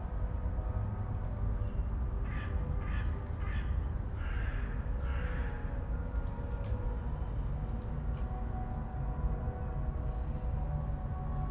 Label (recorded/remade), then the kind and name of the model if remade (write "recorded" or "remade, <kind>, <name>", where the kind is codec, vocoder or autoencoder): recorded